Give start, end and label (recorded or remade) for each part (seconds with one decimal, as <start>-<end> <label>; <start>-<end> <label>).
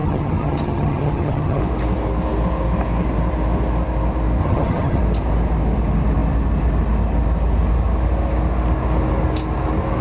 0.0-1.6 remade; 1.6-4.4 recorded; 4.4-5.0 remade; 5.0-10.0 recorded